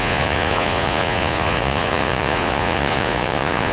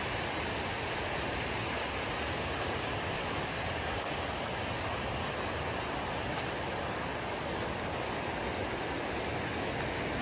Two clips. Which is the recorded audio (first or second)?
second